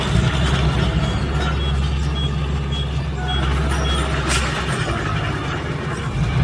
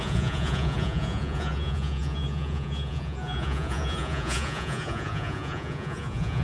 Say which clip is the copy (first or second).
second